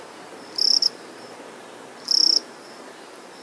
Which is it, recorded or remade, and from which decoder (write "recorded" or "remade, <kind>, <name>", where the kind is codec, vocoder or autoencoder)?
remade, vocoder, BigVGAN v2